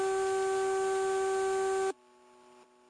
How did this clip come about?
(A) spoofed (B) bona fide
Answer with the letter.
B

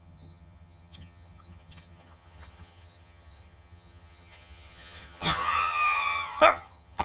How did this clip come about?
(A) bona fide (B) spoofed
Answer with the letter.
B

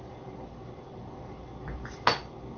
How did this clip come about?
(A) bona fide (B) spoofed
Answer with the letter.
A